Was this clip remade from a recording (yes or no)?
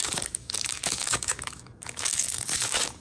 yes